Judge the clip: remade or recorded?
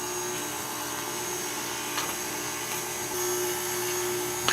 recorded